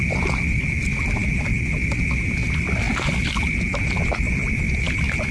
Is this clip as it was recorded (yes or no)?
yes